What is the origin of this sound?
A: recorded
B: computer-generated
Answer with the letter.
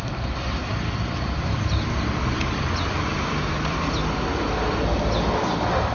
B